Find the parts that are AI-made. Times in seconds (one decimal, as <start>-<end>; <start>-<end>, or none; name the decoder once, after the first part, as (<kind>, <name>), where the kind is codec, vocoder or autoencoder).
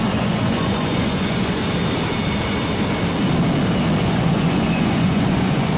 0.0-1.6 (vocoder, Vocos); 4.0-5.8